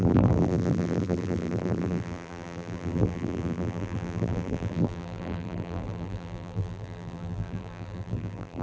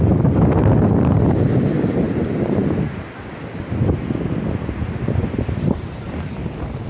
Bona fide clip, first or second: second